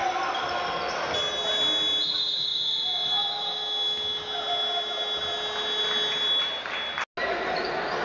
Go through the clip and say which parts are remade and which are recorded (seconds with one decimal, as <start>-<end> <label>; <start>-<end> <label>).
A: 0.0-8.0 recorded